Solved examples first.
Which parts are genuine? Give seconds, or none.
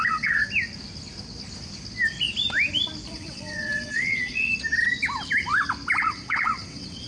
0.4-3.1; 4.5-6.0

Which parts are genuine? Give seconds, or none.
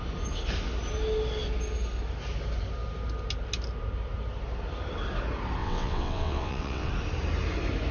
0.0-5.6; 6.9-7.9